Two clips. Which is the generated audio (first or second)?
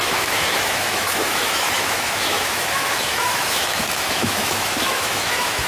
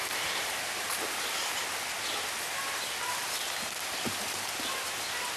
first